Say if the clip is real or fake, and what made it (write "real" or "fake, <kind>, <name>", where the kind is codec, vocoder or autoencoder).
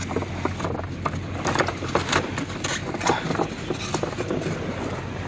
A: real